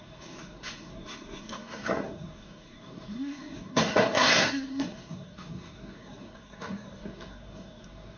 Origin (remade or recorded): remade